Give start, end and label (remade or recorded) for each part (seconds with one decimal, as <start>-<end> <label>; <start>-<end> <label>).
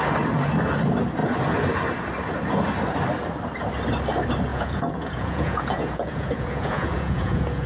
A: 0.0-4.5 recorded; 4.5-7.7 remade